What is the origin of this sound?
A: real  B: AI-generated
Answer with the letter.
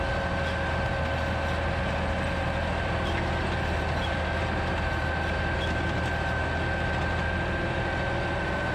A